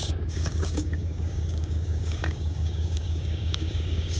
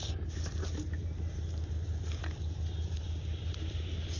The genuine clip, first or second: second